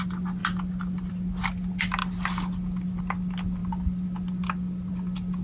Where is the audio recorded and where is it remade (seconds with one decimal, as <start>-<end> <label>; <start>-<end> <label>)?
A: 0.0-5.4 recorded